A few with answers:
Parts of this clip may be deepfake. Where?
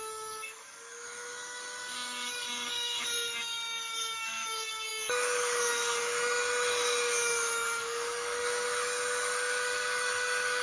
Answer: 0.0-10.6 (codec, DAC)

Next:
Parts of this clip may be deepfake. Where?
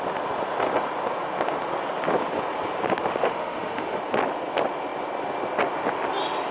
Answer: 3.1-4.0 (autoencoder, DAC-VAE)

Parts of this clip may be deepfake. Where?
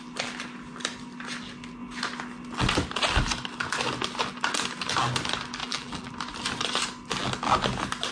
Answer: 5.6-6.1 (vocoder, BigVGAN v2)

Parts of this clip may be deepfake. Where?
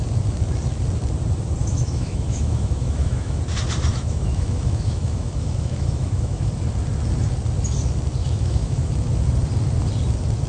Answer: 1.6-3.4 (autoencoder, DAC-VAE); 3.9-6.5; 8.2-8.9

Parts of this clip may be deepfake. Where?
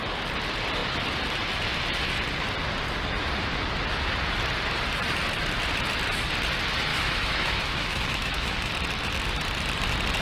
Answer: 6.9-8.7 (autoencoder, DAC-VAE)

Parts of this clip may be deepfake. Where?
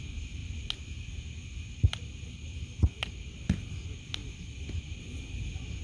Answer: none